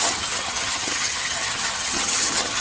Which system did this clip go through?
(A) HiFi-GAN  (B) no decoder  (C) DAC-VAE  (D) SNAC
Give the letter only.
A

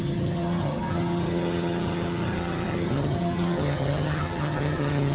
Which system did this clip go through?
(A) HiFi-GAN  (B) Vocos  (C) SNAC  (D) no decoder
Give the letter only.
A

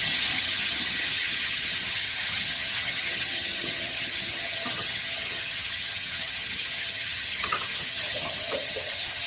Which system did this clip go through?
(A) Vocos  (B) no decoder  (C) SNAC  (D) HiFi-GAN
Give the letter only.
D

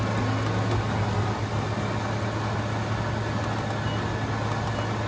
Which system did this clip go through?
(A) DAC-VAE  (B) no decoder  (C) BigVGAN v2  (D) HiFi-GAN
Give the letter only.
B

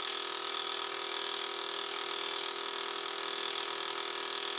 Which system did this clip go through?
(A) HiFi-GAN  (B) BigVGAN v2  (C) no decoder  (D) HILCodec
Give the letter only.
C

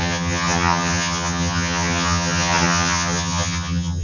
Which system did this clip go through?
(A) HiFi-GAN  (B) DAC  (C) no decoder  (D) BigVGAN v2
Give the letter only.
A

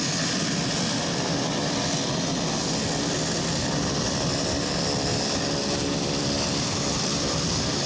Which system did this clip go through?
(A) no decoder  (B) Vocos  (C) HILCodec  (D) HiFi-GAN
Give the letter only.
A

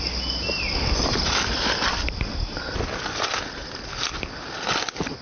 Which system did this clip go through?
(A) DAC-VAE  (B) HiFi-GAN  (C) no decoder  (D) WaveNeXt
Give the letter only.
C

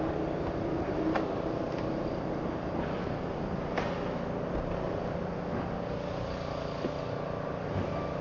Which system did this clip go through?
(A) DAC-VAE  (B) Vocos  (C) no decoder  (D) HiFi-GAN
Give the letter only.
C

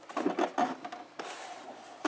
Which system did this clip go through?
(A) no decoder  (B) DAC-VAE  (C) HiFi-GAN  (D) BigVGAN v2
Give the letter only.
A